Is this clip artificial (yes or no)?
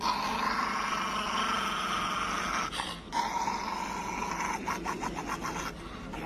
no